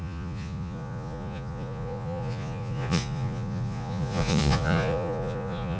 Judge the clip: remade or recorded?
remade